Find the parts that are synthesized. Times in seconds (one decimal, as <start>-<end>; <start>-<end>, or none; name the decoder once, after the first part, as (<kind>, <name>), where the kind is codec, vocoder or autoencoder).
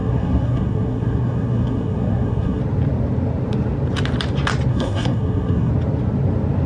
0.0-2.6 (codec, SNAC); 4.7-5.7